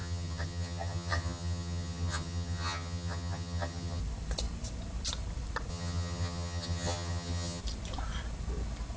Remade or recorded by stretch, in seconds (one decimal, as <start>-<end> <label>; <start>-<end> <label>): 0.0-4.0 remade; 4.0-5.7 recorded; 5.7-7.6 remade; 7.6-9.0 recorded